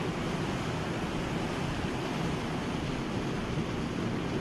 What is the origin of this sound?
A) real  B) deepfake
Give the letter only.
A